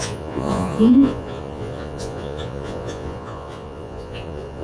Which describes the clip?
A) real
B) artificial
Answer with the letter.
B